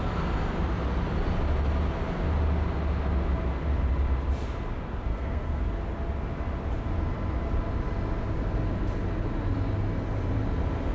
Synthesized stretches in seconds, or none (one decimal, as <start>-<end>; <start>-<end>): 5.1-5.6